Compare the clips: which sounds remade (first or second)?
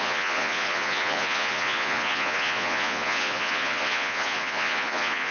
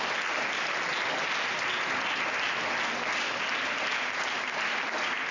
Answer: first